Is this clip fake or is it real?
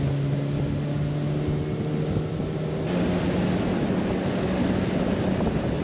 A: real